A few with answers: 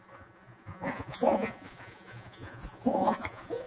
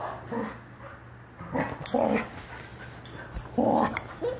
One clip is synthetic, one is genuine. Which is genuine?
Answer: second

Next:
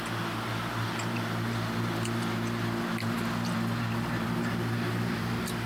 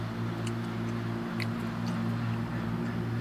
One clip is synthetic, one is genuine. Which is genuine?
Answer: second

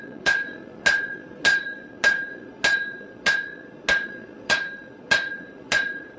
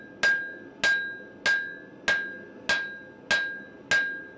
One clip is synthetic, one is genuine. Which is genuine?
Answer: second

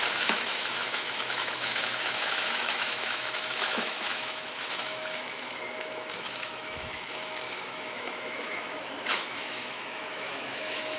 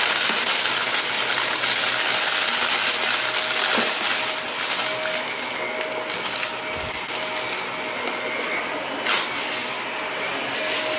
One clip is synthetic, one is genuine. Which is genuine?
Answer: second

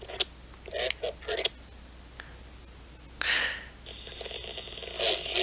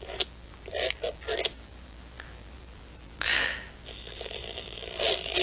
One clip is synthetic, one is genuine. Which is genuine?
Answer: first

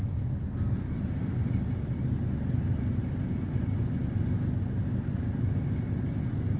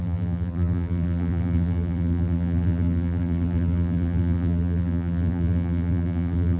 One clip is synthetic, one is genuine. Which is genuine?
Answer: first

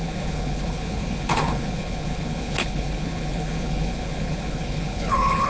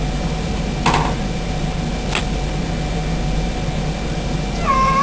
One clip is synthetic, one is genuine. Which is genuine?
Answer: second